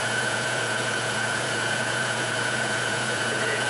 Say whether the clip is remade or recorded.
remade